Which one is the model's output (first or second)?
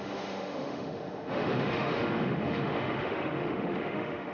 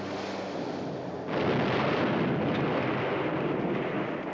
first